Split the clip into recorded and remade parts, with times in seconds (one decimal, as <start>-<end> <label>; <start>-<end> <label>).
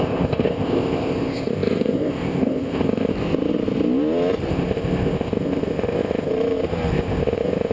0.0-3.1 remade; 3.1-4.5 recorded; 4.5-6.3 remade; 6.3-6.9 recorded; 6.9-7.7 remade